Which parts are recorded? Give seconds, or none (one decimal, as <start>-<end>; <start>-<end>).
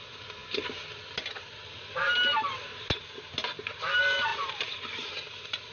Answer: 0.0-4.3